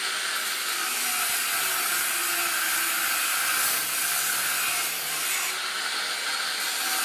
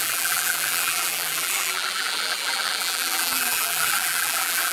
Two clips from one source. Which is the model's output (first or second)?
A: second